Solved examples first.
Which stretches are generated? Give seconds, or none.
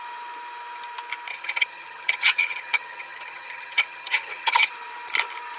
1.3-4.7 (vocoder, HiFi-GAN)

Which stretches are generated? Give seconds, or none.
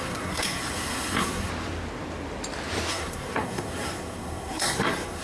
0.0-1.5 (codec, SNAC); 2.9-5.2